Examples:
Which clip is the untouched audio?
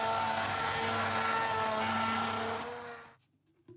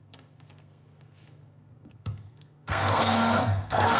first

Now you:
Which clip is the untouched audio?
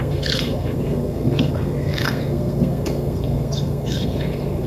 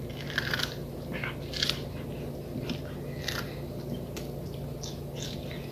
second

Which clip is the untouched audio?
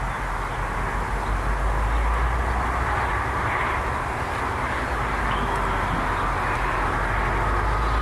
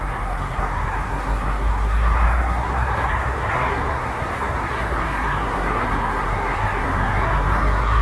first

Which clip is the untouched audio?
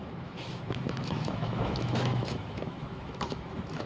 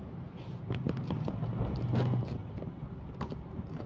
second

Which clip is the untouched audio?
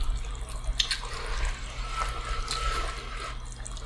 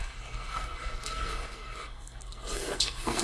first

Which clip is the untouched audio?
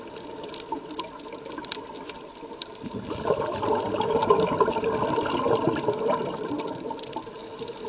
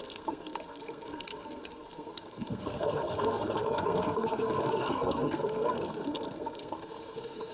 first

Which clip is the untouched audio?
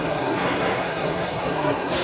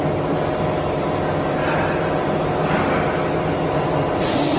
second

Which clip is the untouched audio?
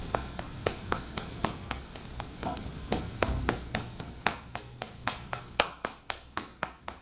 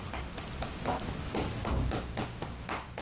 second